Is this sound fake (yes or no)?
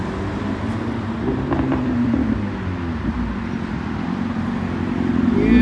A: no